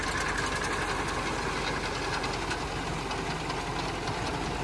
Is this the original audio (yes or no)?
yes